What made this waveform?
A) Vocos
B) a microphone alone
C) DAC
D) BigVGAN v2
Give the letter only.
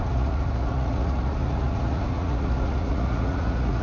A